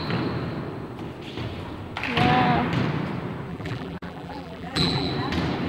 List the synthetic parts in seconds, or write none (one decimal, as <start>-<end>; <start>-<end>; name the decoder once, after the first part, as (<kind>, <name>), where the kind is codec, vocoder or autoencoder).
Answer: 3.5-5.1 (vocoder, BigVGAN v2)

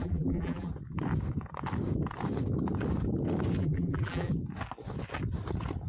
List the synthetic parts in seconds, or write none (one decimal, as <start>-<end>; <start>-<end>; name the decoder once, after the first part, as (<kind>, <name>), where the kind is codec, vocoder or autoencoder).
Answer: 0.0-0.7 (vocoder, BigVGAN v2); 3.6-4.3

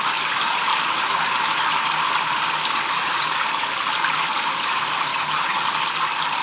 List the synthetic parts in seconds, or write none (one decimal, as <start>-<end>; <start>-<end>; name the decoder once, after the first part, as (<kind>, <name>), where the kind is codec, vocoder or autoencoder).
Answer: 5.1-5.6 (vocoder, HiFi-GAN)

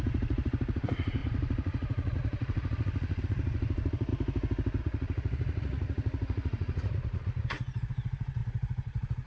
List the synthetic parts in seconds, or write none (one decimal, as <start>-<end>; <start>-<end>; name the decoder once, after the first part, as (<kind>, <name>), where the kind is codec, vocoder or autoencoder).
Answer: 0.0-4.1 (vocoder, Vocos); 4.8-9.3

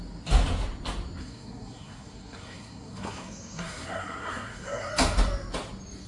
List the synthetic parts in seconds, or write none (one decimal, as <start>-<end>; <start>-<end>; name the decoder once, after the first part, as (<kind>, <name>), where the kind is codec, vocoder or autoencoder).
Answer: 1.2-4.9 (codec, SNAC)

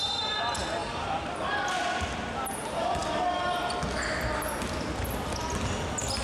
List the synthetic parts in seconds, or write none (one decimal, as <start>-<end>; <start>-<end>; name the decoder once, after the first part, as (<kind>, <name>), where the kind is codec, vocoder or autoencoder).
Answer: none

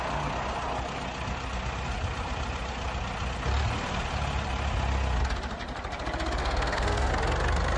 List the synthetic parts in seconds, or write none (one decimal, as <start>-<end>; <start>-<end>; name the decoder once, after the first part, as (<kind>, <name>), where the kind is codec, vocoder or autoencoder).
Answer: 6.4-7.1 (codec, SNAC)

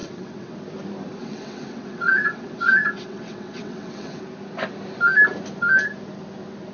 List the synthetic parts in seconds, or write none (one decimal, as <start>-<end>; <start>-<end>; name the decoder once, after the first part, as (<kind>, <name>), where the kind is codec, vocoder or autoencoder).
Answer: 0.0-0.5 (vocoder, WaveNeXt); 1.2-4.2